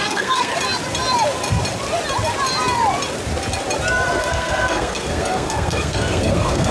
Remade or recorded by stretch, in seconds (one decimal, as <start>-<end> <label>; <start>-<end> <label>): 0.0-0.5 remade; 0.5-4.2 recorded; 4.2-6.7 remade